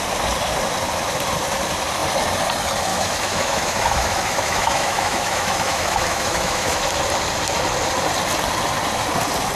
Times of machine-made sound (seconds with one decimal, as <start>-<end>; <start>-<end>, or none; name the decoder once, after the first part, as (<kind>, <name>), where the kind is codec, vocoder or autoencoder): 2.9-6.8 (autoencoder, DAC-VAE)